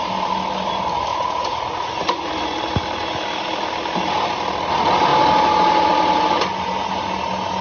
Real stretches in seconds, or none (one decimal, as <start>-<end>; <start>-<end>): 0.0-1.1; 2.3-7.6